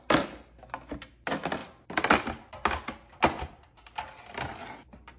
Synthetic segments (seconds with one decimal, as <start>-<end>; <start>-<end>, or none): none